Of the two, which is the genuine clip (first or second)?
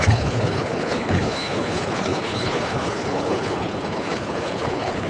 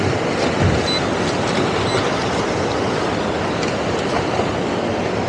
second